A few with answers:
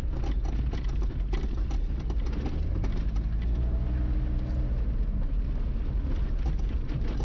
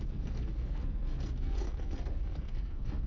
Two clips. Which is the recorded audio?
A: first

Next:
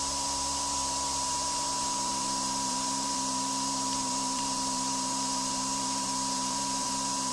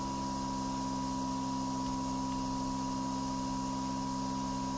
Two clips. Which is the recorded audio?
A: second